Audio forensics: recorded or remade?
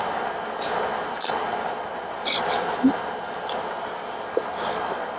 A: recorded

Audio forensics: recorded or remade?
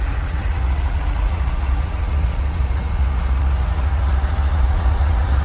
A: remade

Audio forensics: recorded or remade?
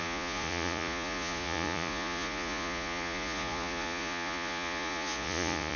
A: remade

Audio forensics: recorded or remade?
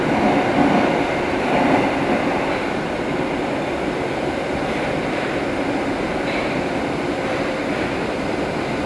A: recorded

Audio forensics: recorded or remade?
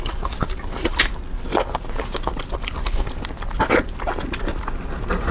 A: recorded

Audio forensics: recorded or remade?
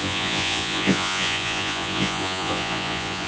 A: remade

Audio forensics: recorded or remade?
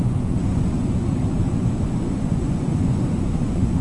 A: remade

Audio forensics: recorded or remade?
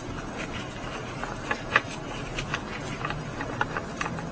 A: recorded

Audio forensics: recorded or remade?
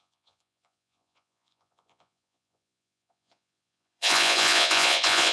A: remade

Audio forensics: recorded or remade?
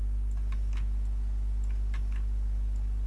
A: recorded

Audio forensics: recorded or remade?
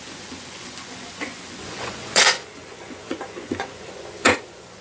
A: remade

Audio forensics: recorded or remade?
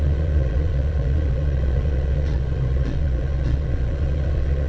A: remade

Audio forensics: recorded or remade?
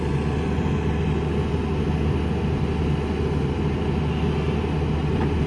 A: recorded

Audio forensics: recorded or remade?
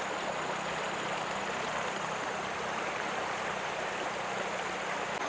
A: recorded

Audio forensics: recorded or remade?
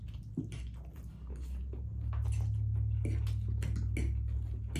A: recorded